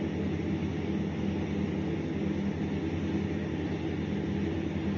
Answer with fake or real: real